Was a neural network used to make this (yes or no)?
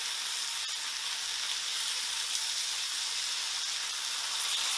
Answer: no